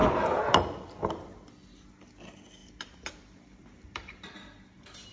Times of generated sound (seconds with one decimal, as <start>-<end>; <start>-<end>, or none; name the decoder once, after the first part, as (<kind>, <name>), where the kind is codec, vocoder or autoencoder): 2.6-4.1 (vocoder, BigVGAN v2)

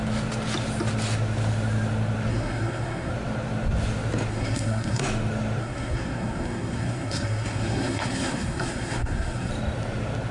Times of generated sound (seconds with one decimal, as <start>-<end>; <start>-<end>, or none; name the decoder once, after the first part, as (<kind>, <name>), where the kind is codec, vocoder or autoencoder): 2.3-3.1 (codec, SNAC); 4.3-5.0; 5.6-9.5

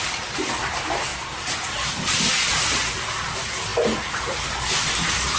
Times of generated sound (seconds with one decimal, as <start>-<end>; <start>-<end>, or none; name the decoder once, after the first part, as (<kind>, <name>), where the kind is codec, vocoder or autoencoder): none